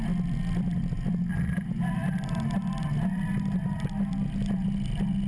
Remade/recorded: recorded